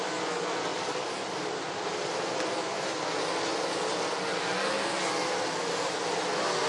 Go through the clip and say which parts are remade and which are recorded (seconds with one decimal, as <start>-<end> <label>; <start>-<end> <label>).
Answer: 0.0-6.7 recorded